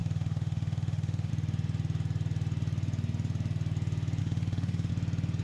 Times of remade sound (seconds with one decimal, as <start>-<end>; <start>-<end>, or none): 0.0-1.3; 4.2-4.9